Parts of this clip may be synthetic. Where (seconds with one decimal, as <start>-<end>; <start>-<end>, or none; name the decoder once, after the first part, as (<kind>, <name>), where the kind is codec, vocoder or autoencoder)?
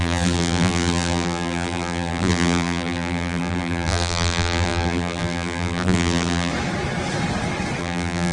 0.0-6.5 (vocoder, BigVGAN v2); 7.8-8.3